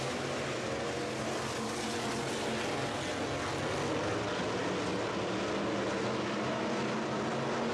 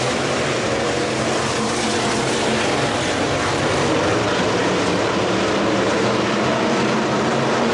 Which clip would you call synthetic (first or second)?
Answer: second